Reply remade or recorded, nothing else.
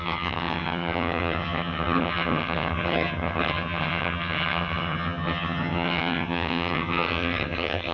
remade